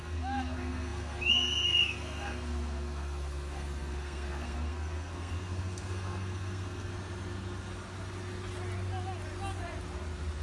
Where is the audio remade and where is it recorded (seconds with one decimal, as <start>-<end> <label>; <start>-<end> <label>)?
0.0-6.9 remade; 6.9-10.4 recorded